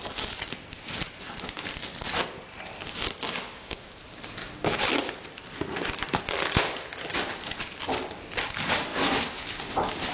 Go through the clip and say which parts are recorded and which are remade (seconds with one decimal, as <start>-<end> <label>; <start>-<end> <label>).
0.0-3.2 recorded; 3.2-3.9 remade; 3.9-4.4 recorded; 4.4-4.9 remade; 4.9-10.1 recorded